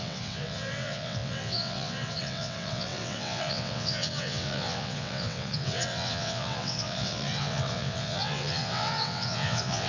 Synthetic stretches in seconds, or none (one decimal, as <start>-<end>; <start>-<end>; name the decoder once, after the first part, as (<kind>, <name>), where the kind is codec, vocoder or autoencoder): 0.0-9.9 (vocoder, WaveNeXt)